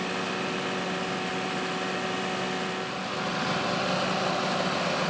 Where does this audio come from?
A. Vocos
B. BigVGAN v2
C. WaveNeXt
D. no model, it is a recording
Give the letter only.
D